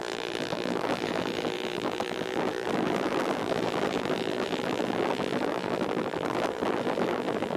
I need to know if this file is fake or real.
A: fake